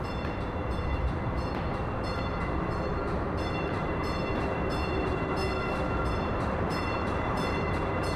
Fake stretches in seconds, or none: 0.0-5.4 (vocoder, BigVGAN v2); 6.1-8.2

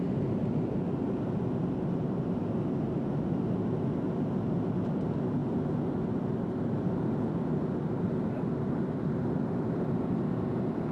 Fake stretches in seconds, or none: none